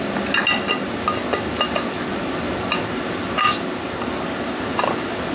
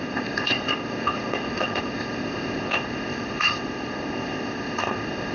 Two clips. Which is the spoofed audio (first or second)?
second